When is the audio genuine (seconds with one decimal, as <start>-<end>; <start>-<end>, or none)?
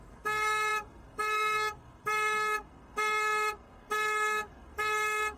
none